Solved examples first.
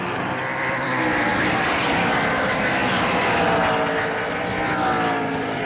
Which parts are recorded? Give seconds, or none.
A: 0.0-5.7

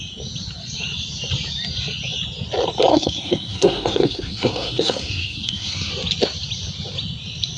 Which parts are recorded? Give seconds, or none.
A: 0.0-2.9; 5.9-7.6

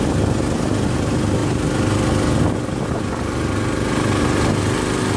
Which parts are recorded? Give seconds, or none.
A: 0.0-5.2

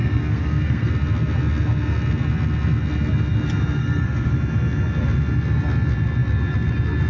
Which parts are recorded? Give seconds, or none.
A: 0.9-3.8; 4.3-7.1

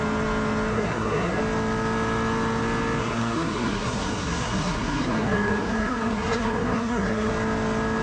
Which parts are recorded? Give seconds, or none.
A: 0.0-0.7; 1.4-3.0; 7.3-8.0

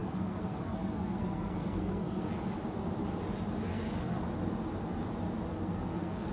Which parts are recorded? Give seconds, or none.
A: 2.3-3.7; 4.2-5.5

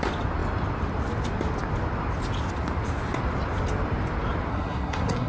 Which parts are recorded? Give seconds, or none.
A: 0.0-4.5

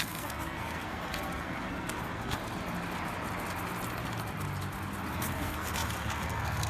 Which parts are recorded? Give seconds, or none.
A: 2.4-5.1